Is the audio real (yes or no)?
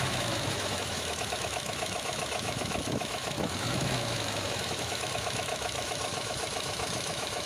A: no